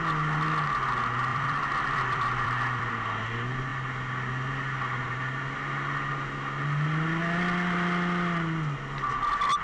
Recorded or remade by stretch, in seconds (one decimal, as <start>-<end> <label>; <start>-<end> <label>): 0.0-1.3 recorded; 1.3-2.9 remade; 2.9-9.6 recorded